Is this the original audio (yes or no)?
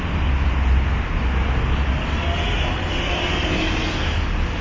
yes